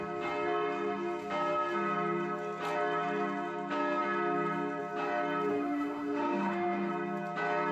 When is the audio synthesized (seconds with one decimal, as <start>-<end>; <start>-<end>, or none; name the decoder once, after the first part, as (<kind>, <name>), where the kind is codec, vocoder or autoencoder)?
5.5-6.9 (autoencoder, DAC-VAE)